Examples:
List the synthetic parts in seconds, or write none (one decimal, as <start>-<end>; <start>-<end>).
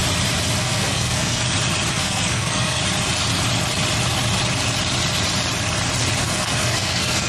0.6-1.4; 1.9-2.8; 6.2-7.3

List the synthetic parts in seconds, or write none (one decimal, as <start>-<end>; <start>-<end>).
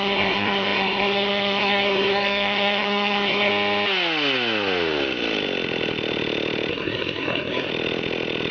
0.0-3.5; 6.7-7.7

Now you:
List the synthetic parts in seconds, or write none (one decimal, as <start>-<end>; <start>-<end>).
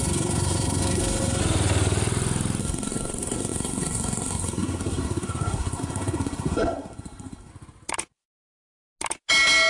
0.0-1.4; 2.6-7.5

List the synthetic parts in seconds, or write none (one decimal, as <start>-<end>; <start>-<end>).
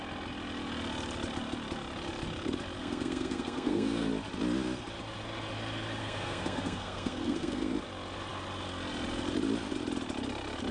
2.8-4.1; 6.0-7.7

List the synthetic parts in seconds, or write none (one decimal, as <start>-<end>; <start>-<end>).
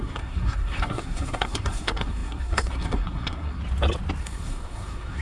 0.0-3.6; 4.2-5.2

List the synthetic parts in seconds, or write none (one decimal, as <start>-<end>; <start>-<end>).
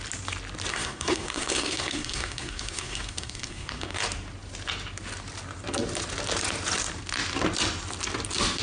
0.7-4.0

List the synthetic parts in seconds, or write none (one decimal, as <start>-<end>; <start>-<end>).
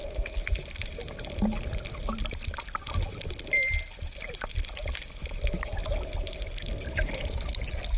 none